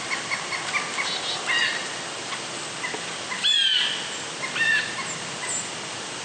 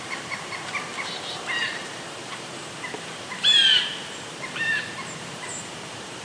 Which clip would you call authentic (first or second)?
first